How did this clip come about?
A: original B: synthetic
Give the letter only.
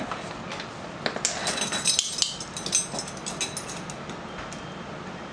A